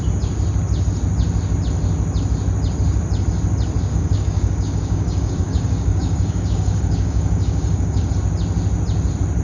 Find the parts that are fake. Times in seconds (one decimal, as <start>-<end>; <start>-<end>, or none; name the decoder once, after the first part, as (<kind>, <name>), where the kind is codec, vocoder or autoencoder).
3.9-8.1 (codec, DAC)